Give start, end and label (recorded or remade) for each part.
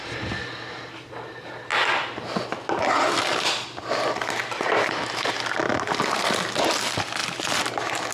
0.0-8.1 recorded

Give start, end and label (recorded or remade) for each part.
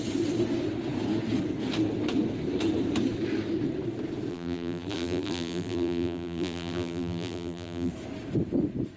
0.0-4.3 recorded; 4.3-7.9 remade; 7.9-9.0 recorded